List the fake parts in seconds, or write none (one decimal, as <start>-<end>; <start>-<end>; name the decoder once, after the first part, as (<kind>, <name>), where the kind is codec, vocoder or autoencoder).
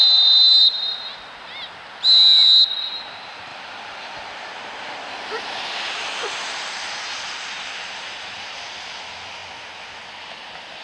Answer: 0.6-1.3 (vocoder, BigVGAN v2); 3.5-7.0